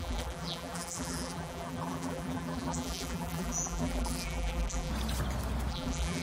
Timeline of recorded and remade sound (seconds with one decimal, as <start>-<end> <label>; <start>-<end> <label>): 0.0-4.9 remade; 4.9-5.7 recorded; 5.7-6.2 remade